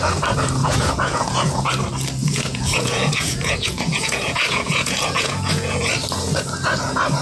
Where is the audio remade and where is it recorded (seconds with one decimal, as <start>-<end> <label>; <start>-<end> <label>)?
0.0-0.6 recorded; 0.6-1.7 remade; 1.7-2.2 recorded; 2.2-5.9 remade; 5.9-7.2 recorded